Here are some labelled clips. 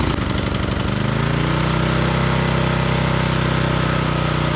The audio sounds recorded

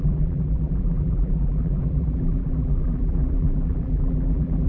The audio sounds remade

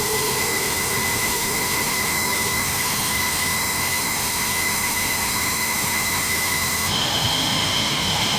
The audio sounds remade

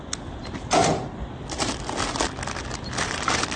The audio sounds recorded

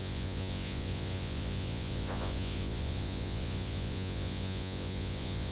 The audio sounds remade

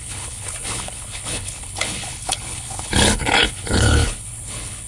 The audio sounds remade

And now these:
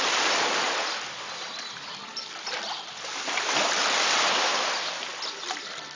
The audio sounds remade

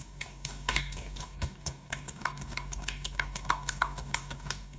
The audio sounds remade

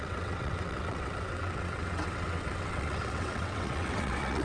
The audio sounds remade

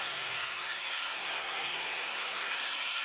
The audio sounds remade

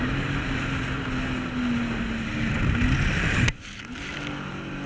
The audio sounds recorded